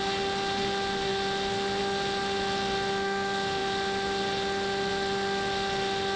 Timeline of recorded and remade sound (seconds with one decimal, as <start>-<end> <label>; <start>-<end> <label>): 0.0-6.2 recorded